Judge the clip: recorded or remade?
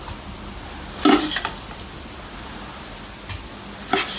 recorded